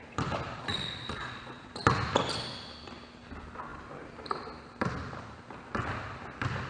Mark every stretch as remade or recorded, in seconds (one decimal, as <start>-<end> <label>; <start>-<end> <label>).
0.0-0.6 recorded; 0.6-1.7 remade; 1.7-6.7 recorded

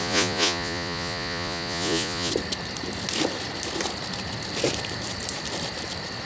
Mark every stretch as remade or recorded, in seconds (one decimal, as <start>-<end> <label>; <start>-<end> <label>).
0.0-2.3 remade; 2.3-6.3 recorded

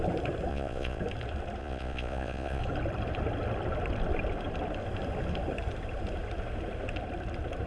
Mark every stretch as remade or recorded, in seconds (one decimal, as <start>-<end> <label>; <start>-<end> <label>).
0.0-0.5 recorded; 0.5-1.0 remade; 1.0-1.6 recorded; 1.6-2.6 remade; 2.6-7.7 recorded

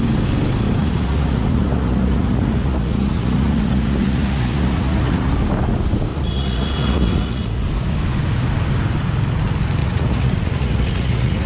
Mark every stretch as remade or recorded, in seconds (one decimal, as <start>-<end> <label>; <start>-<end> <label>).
0.0-0.8 recorded; 0.8-5.3 remade; 5.3-6.1 recorded; 6.1-7.6 remade; 7.6-9.8 recorded; 9.8-11.5 remade

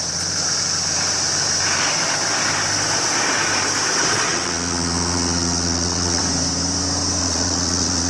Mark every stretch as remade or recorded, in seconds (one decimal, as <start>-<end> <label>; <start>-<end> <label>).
0.0-4.0 recorded; 4.0-6.2 remade; 6.2-7.2 recorded; 7.2-8.1 remade

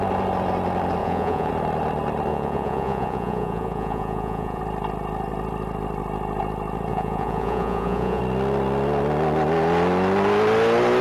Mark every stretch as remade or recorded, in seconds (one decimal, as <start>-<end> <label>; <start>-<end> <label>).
0.0-1.0 recorded; 1.0-1.5 remade; 1.5-2.3 recorded; 2.3-4.6 remade; 4.6-6.9 recorded; 6.9-8.2 remade; 8.2-11.0 recorded

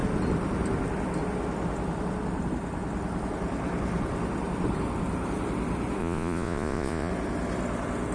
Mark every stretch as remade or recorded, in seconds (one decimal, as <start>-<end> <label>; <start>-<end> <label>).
0.0-6.0 recorded; 6.0-7.1 remade; 7.1-8.1 recorded

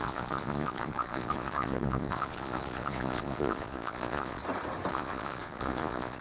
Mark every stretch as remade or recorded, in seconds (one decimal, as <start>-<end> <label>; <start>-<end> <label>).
0.0-4.4 remade; 4.4-4.9 recorded; 4.9-6.2 remade